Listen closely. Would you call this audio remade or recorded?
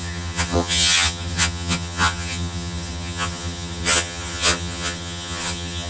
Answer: remade